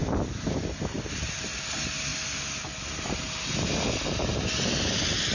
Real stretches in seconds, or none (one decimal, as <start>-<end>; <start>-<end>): 0.0-5.3